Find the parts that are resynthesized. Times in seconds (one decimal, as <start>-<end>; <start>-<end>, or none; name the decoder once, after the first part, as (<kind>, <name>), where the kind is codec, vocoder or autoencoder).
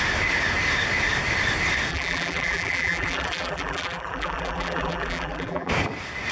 1.9-5.7 (vocoder, BigVGAN v2)